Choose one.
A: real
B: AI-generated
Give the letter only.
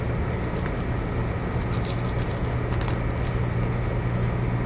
A